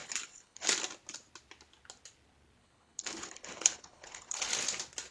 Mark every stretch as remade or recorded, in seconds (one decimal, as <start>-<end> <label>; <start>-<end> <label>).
0.0-0.7 remade; 0.7-2.6 recorded; 2.6-4.5 remade; 4.5-5.1 recorded